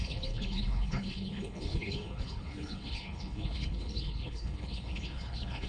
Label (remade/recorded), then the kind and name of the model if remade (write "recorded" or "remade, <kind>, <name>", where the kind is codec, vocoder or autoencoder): remade, codec, HILCodec